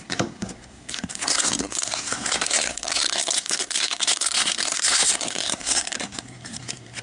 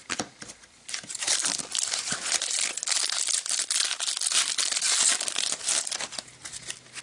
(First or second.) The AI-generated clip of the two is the first